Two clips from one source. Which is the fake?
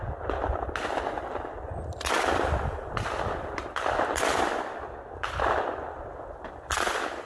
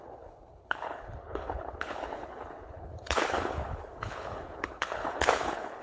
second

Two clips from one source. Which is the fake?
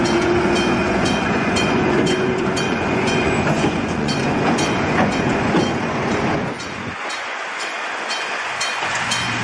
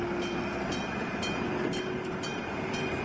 first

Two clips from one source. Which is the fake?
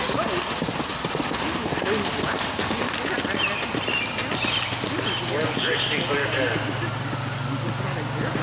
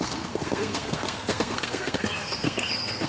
second